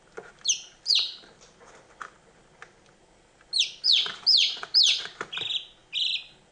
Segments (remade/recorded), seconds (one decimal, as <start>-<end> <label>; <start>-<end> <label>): 0.0-6.5 recorded